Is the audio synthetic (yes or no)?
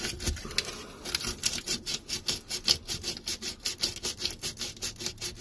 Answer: no